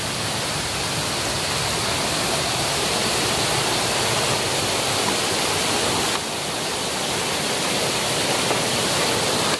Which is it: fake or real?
real